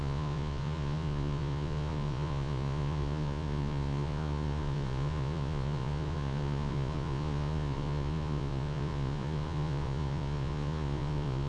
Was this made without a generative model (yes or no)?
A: no